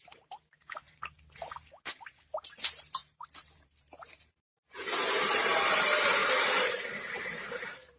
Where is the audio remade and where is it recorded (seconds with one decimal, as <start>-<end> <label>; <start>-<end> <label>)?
0.0-8.0 remade